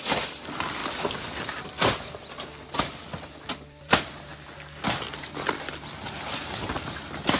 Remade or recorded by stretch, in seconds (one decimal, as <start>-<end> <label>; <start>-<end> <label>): 0.0-0.8 remade; 0.8-2.8 recorded; 2.8-4.3 remade; 4.3-7.4 recorded